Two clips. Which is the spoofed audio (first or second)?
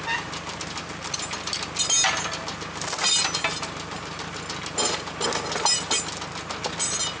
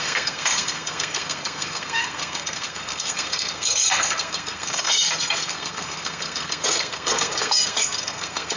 second